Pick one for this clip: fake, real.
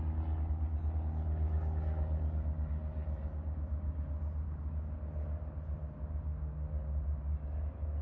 real